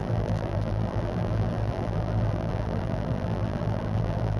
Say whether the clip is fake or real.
fake